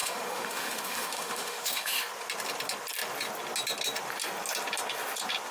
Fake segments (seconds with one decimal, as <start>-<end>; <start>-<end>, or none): 0.0-2.0